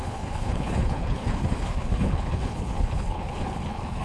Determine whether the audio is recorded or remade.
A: remade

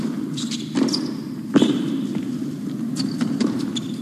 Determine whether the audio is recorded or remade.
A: recorded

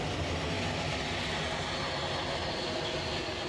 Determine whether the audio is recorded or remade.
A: recorded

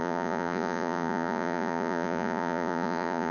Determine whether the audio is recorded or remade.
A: remade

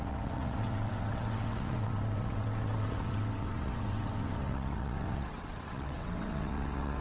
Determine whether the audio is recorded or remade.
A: remade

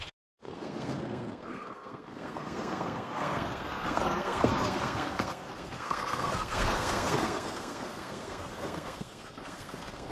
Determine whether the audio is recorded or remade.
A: remade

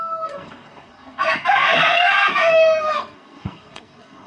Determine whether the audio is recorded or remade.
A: remade